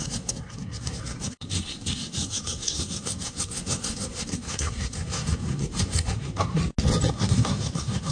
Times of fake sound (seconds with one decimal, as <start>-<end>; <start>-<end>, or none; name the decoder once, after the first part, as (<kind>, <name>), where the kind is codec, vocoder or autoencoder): 0.0-6.6 (codec, SNAC); 7.1-8.1